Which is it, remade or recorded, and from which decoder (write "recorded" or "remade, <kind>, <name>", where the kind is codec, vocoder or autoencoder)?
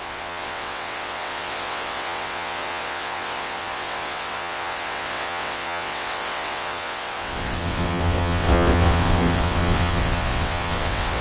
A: remade, vocoder, WaveNeXt